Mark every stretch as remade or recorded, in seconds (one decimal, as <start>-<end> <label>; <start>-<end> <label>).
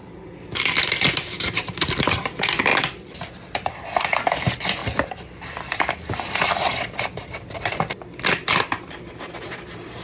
0.0-2.7 recorded; 2.7-4.2 remade; 4.2-4.8 recorded; 4.8-8.6 remade; 8.6-10.0 recorded